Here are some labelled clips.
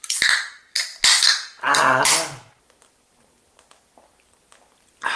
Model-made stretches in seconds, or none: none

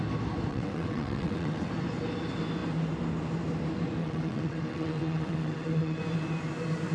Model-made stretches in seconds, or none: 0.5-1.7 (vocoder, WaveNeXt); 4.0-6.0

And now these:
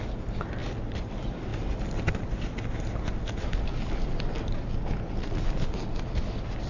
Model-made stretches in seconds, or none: none

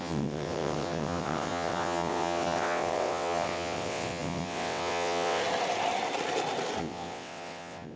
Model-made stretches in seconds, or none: 0.0-5.4 (vocoder, WaveNeXt); 6.8-8.0

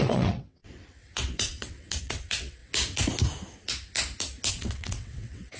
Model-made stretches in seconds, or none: 0.0-2.6 (vocoder, WaveNeXt); 4.5-5.6

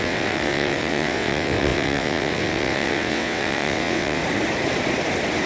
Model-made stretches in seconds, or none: 0.0-4.2 (vocoder, WaveNeXt)

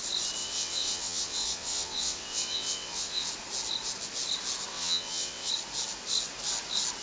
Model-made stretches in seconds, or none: 0.4-3.3 (vocoder, WaveNeXt); 4.7-5.5

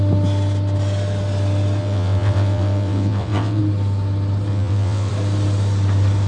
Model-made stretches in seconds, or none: 1.8-3.6 (vocoder, WaveNeXt); 4.5-5.1